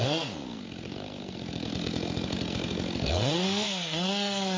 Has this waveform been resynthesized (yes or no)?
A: yes